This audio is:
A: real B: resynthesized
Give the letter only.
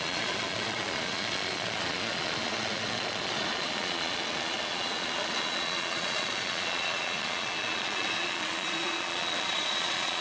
B